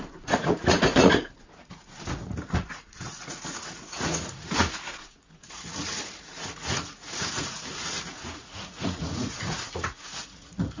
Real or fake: fake